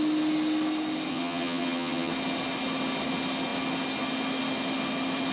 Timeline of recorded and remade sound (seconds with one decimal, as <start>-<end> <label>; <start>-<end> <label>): 0.0-1.1 recorded; 1.1-2.1 remade; 2.1-5.3 recorded